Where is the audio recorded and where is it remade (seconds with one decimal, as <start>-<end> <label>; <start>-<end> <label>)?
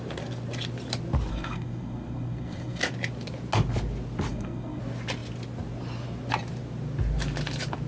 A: 0.0-1.3 recorded; 1.3-2.8 remade; 2.8-4.3 recorded; 4.3-4.8 remade; 4.8-7.9 recorded